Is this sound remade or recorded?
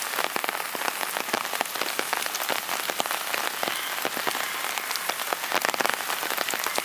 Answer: recorded